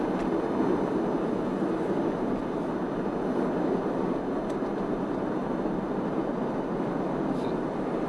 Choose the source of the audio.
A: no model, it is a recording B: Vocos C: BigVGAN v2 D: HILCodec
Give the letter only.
A